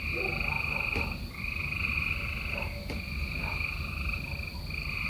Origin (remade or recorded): recorded